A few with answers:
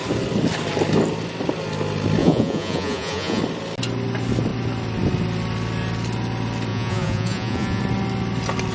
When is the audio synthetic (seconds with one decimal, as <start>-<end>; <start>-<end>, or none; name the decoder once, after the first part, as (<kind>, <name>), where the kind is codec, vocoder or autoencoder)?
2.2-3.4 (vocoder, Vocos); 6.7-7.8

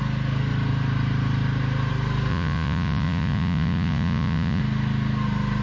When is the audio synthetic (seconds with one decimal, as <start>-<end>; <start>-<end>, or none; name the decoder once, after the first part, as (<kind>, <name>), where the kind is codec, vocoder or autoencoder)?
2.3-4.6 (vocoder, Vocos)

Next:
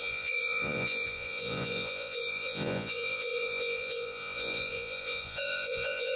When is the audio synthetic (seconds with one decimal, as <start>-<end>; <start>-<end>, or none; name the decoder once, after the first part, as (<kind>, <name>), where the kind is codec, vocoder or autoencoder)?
0.0-6.2 (vocoder, Vocos)

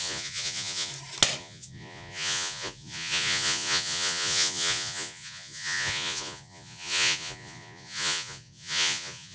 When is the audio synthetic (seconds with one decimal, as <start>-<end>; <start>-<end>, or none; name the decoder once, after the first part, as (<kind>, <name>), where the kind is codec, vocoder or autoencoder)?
0.0-0.9 (vocoder, Vocos); 1.4-9.3